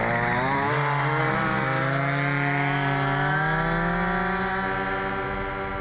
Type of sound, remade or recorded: recorded